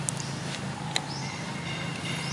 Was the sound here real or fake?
real